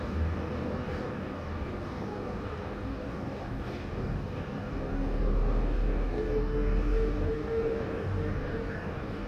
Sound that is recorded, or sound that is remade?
remade